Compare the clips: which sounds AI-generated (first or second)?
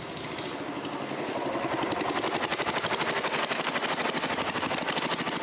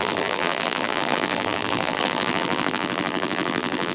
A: second